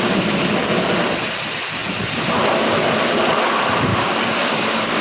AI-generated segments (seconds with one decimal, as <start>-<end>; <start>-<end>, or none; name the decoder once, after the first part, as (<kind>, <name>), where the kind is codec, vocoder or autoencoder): 3.9-5.0 (codec, DAC)